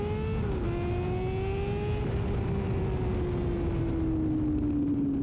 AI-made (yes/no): no